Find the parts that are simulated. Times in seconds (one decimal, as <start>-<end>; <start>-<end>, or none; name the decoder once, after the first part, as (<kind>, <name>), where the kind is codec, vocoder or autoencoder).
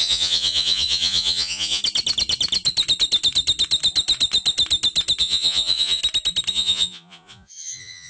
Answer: 0.0-1.8 (vocoder, Vocos); 5.2-6.0; 6.5-8.1